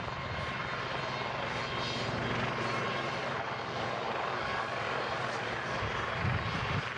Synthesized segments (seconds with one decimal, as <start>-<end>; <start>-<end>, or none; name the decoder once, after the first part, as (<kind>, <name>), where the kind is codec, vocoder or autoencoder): 3.1-5.8 (codec, DAC)